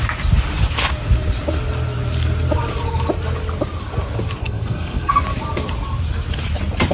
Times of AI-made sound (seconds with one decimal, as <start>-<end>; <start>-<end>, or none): 4.4-5.1

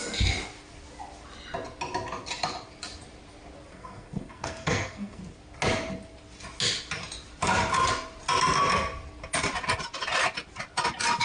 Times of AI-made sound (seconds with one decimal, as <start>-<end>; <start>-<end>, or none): 3.7-5.2

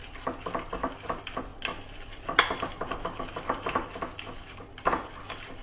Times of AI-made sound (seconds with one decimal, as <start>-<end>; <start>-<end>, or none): none

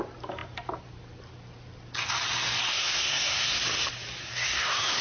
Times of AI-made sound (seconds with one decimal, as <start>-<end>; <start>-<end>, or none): 2.7-3.6; 4.2-5.0

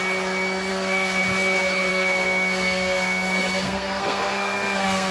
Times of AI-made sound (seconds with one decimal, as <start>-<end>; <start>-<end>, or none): 0.7-1.2; 1.9-5.1